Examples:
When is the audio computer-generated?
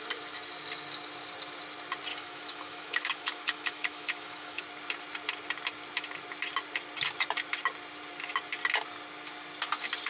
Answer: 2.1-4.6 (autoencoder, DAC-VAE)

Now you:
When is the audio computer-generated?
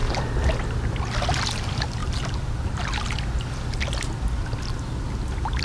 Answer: none